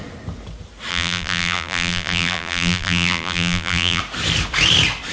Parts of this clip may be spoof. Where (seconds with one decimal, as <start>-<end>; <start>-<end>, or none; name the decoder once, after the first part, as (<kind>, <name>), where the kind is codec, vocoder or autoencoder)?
0.9-4.0 (vocoder, BigVGAN v2)